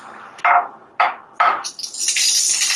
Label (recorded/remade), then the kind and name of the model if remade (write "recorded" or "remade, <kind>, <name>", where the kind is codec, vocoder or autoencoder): recorded